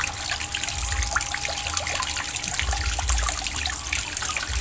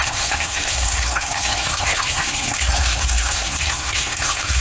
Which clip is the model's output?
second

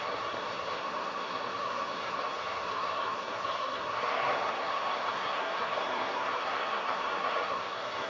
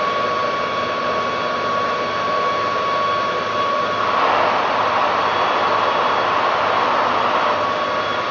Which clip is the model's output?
first